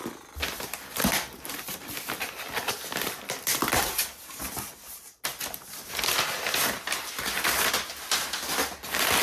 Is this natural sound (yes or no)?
yes